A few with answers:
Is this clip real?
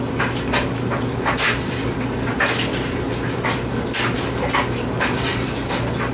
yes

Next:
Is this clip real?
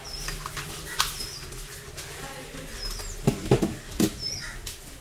yes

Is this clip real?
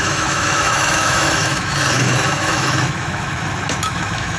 no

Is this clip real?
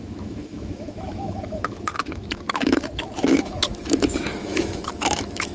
no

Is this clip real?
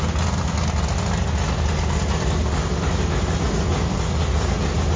yes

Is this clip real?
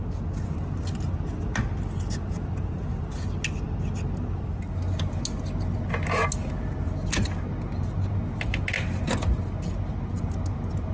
yes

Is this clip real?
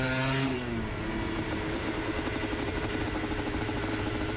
no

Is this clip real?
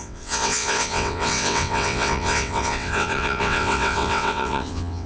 no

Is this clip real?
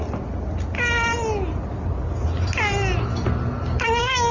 yes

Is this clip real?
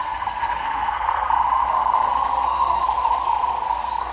no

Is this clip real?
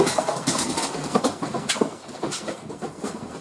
no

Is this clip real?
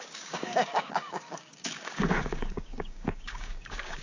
no